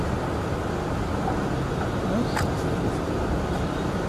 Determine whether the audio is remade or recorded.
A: recorded